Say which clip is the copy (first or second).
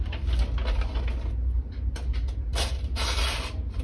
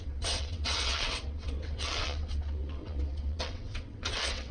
second